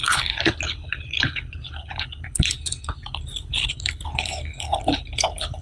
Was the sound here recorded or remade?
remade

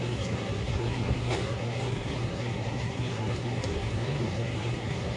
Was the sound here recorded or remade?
remade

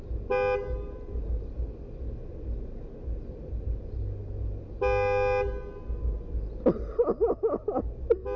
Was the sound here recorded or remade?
recorded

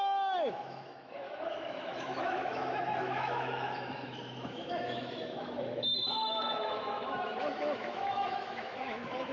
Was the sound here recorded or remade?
remade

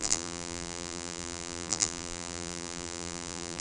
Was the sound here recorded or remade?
remade